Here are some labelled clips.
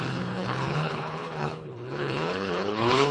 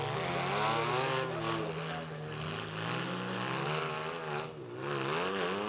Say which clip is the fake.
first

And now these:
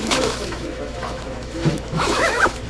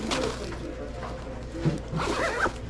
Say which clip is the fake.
first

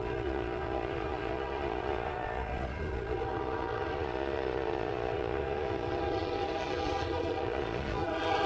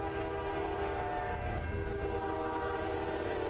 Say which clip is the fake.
first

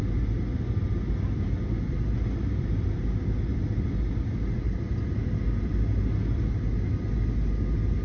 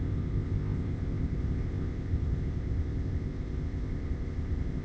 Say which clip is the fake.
second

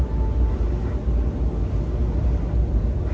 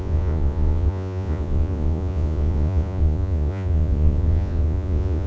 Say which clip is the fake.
second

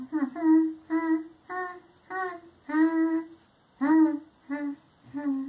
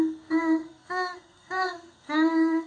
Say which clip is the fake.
second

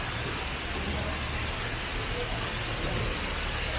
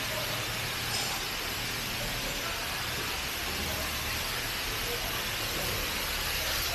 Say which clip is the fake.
second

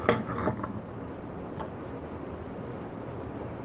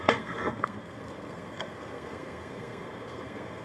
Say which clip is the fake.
second